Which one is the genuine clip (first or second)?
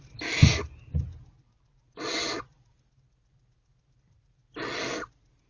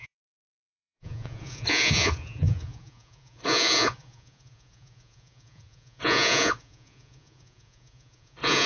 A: first